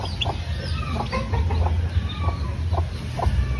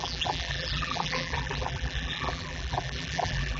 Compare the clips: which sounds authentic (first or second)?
first